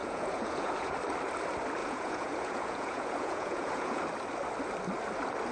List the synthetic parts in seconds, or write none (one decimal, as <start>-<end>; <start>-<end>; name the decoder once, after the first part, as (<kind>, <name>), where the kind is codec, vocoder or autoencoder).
0.0-0.9 (vocoder, Vocos); 1.8-4.0

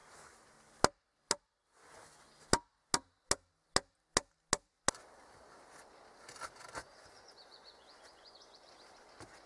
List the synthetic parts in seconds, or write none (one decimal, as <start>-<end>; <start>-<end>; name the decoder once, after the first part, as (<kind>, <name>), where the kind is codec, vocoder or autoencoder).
6.8-8.7 (vocoder, Vocos)

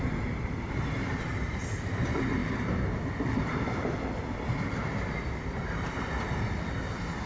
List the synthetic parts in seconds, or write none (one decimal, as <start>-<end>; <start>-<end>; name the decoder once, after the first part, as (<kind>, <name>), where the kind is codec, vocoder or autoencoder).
none

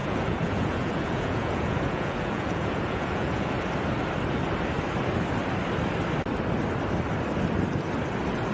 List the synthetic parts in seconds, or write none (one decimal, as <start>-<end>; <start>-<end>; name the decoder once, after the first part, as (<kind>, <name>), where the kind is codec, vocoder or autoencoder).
0.0-3.5 (vocoder, Vocos)

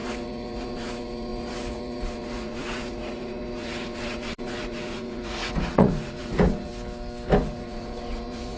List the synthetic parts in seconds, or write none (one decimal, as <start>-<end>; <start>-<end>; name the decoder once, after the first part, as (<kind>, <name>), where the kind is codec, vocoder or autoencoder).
0.0-6.7 (vocoder, Vocos); 7.4-8.6

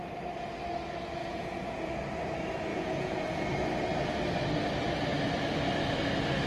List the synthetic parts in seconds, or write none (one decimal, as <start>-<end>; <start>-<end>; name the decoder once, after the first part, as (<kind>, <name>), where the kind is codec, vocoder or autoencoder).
1.2-1.9 (vocoder, Vocos); 2.7-3.5

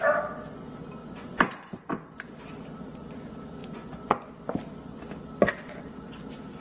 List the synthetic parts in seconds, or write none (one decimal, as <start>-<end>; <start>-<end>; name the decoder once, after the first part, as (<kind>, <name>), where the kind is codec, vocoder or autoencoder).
1.0-1.7 (vocoder, Vocos); 3.6-4.3

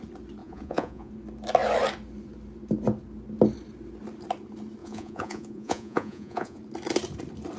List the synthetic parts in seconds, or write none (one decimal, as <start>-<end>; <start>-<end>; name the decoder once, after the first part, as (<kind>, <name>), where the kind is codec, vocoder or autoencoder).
0.4-1.1 (vocoder, Vocos); 4.8-6.6